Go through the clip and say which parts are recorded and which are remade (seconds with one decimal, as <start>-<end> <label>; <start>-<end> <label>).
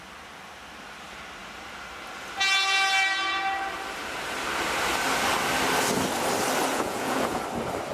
0.0-6.7 recorded; 6.7-7.4 remade; 7.4-7.9 recorded